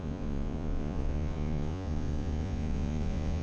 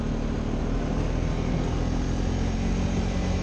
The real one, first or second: second